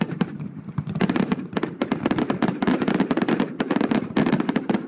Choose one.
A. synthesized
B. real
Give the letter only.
A